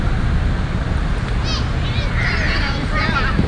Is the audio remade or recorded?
recorded